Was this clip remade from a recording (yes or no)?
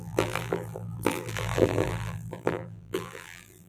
yes